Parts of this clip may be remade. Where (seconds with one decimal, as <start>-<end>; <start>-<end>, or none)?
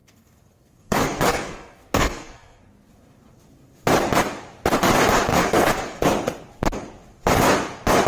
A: 0.0-2.6; 5.3-6.0